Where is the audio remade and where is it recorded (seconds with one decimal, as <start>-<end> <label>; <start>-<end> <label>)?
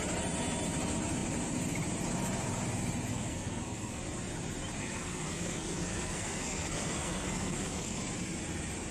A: 0.0-3.1 recorded; 3.1-4.0 remade; 4.0-4.8 recorded; 4.8-8.0 remade; 8.0-8.9 recorded